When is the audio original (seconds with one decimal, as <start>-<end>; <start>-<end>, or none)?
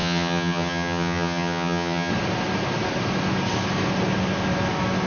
2.1-5.1